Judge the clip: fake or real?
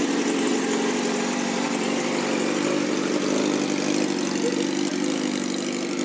real